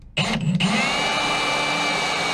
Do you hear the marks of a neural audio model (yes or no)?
no